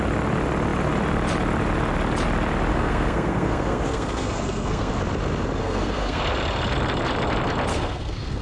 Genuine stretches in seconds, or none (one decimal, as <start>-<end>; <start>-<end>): 0.0-2.7; 4.9-5.6; 6.2-7.7